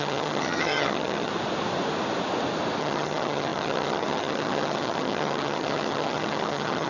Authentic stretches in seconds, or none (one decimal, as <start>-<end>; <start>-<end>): 1.3-2.8